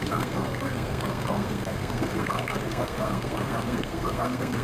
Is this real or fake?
fake